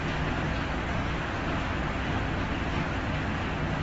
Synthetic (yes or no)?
no